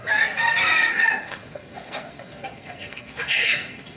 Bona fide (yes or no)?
no